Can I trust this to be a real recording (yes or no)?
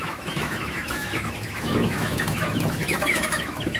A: no